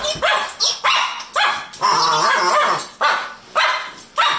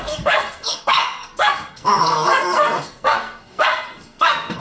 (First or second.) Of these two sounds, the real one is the first